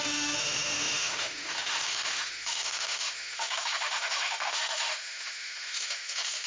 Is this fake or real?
fake